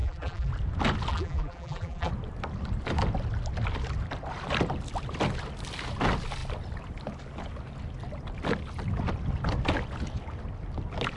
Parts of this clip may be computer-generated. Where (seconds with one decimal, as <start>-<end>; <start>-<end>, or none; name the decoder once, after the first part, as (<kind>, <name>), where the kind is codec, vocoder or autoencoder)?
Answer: 0.0-0.5 (vocoder, BigVGAN v2); 1.1-2.1